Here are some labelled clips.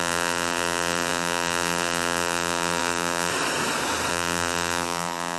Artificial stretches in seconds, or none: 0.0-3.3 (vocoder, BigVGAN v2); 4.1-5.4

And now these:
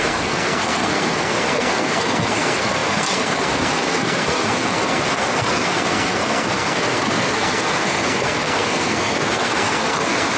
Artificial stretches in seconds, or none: 0.0-10.4 (codec, SNAC)

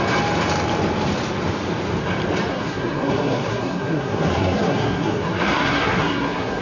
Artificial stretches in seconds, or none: 2.5-6.6 (codec, SNAC)

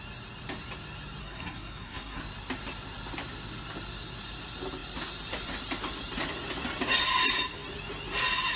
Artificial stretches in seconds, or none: 1.2-2.2 (codec, SNAC)

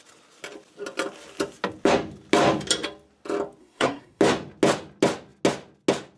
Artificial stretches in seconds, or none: 3.6-4.2 (codec, SNAC)

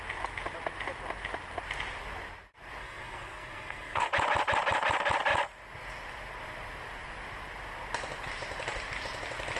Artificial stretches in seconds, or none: 2.8-4.1 (codec, SNAC)

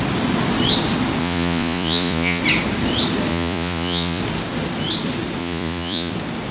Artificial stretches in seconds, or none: 1.2-2.4 (vocoder, Vocos); 3.3-4.2; 5.4-6.1